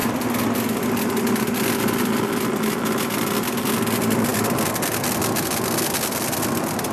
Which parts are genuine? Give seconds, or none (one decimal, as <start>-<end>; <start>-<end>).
0.0-6.9